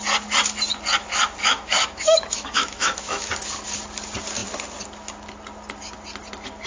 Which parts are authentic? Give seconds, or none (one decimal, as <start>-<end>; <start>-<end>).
0.0-1.4; 3.3-6.7